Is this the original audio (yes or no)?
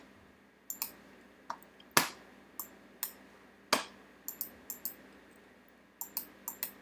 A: yes